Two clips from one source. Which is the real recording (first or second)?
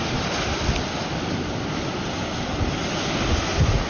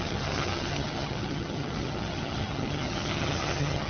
first